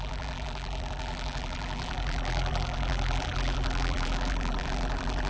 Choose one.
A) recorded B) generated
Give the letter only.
B